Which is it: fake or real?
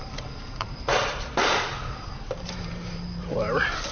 fake